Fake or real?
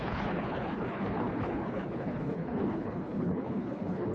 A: fake